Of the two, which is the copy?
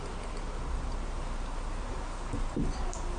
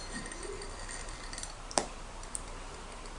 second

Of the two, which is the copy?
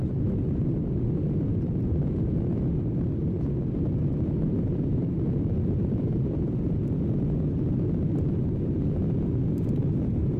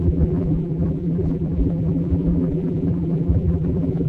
second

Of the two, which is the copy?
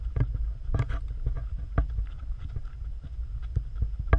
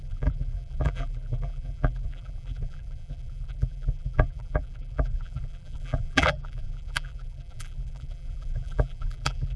second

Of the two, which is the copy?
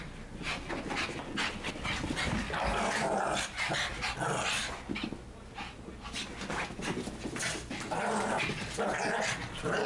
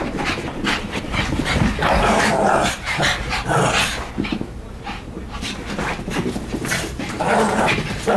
second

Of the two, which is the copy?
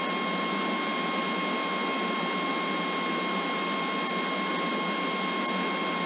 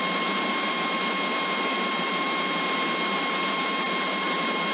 second